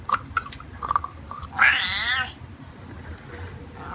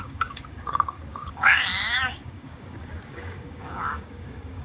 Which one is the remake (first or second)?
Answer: second